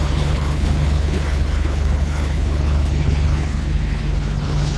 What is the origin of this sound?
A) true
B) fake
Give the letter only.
B